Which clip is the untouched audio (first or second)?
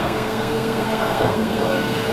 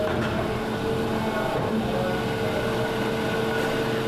second